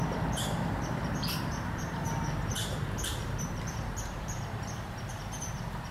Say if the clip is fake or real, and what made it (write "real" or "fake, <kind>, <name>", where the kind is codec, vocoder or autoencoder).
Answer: fake, vocoder, BigVGAN v2